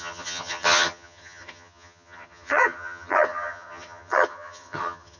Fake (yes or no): yes